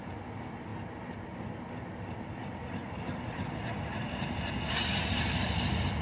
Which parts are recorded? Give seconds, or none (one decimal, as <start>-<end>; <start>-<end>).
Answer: 0.0-6.0